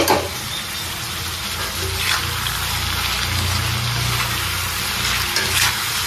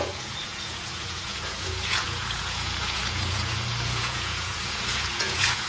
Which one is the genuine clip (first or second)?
first